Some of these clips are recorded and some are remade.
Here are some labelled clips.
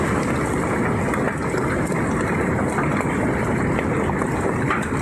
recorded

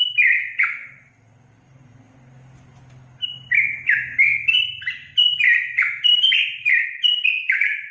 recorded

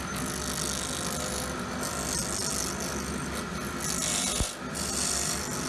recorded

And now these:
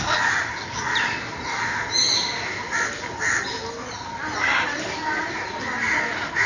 recorded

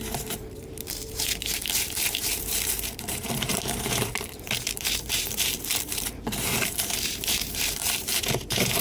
remade